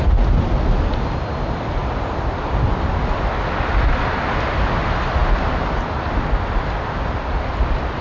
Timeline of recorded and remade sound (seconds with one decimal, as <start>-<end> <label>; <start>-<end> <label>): 0.0-8.0 recorded